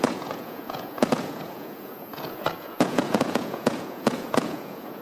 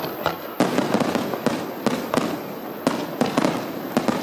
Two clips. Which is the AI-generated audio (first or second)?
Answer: first